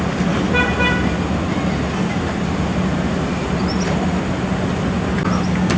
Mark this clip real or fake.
real